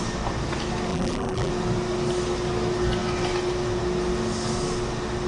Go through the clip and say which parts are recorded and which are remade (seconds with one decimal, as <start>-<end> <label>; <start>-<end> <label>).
0.0-0.9 recorded; 0.9-1.5 remade; 1.5-5.3 recorded